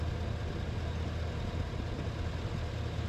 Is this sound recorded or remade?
recorded